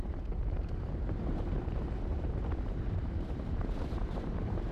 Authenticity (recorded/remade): remade